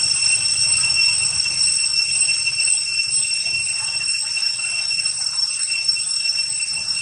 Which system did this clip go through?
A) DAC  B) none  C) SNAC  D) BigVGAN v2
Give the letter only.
B